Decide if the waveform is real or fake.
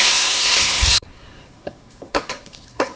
fake